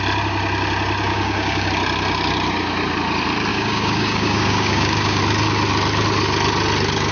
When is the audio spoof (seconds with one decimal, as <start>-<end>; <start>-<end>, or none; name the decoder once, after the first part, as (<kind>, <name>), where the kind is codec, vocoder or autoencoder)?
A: 1.1-1.7 (codec, DAC); 3.5-5.2